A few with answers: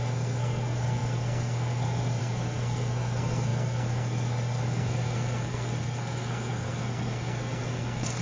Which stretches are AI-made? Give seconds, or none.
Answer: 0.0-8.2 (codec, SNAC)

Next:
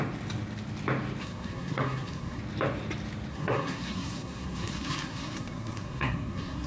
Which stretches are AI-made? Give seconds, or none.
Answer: 1.2-2.4 (codec, SNAC); 3.3-6.7

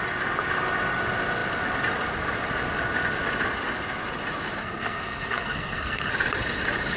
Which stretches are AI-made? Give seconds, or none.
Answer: 4.6-6.1 (codec, SNAC)